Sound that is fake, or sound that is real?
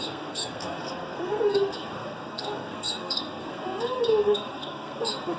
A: fake